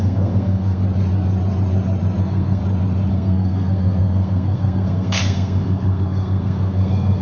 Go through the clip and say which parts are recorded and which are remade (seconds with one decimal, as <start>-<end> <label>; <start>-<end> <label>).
0.0-0.8 remade; 0.8-2.2 recorded; 2.2-2.6 remade; 2.6-3.1 recorded; 3.1-7.2 remade